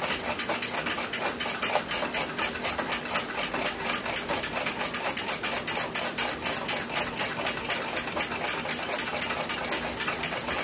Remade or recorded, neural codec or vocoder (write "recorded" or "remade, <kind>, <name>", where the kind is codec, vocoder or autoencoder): recorded